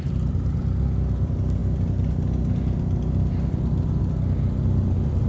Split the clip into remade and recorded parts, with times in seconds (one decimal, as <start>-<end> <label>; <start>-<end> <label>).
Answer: 0.0-5.3 recorded